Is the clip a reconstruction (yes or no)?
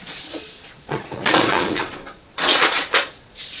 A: yes